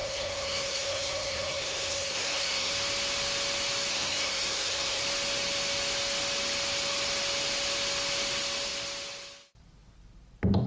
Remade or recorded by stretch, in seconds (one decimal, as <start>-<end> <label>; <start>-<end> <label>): 0.0-2.7 remade; 2.7-3.9 recorded; 3.9-5.0 remade; 5.0-10.7 recorded